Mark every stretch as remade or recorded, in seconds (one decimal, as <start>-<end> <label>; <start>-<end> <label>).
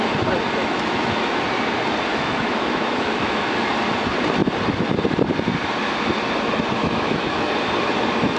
0.0-0.6 recorded; 0.6-1.4 remade; 1.4-2.1 recorded; 2.1-3.7 remade; 3.7-6.8 recorded; 6.8-7.5 remade; 7.5-8.4 recorded